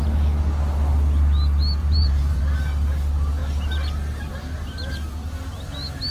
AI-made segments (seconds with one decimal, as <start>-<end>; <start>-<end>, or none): 1.8-2.4